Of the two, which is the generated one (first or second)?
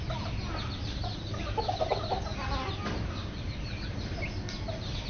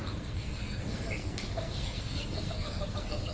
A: second